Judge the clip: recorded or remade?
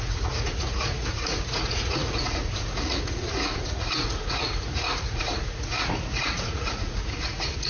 remade